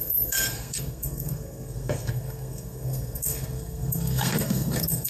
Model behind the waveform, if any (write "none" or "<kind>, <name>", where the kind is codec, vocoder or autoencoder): codec, SNAC